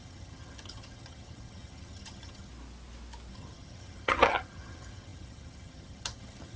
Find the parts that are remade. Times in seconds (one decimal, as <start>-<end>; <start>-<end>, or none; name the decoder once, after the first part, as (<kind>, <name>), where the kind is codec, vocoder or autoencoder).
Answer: 0.0-2.5 (vocoder, HiFi-GAN); 3.3-6.6